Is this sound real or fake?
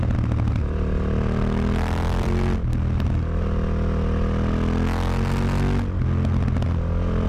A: real